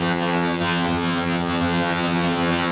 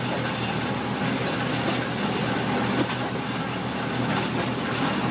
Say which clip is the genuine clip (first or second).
second